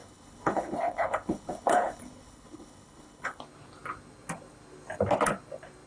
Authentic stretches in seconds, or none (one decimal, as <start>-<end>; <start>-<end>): 3.4-5.9